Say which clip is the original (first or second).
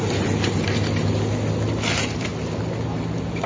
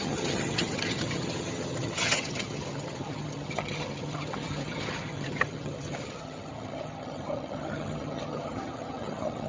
first